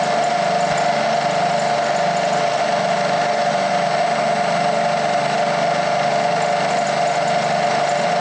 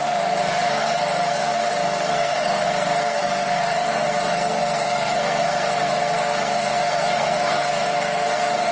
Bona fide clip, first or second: first